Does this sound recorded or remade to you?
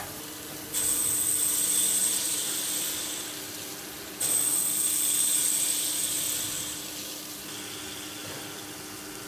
recorded